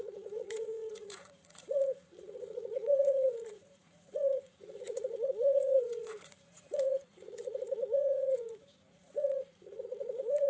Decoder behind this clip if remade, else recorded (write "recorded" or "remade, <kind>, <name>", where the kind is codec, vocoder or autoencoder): remade, vocoder, Vocos